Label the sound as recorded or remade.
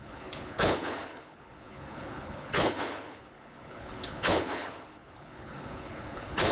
remade